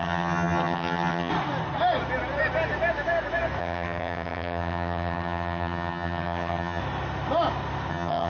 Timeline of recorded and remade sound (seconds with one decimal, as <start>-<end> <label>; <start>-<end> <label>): 0.0-1.3 remade; 1.3-3.6 recorded; 3.6-6.8 remade; 6.8-7.9 recorded; 7.9-8.3 remade